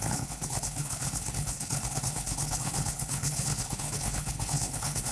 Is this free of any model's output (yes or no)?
no